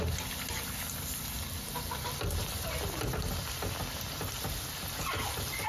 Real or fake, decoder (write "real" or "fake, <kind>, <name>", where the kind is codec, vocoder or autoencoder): real